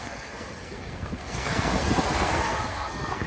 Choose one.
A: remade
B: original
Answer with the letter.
A